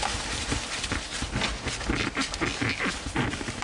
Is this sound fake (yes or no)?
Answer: no